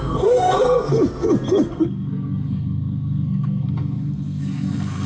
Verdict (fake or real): fake